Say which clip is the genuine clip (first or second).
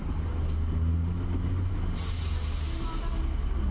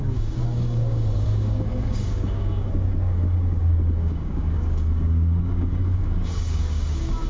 first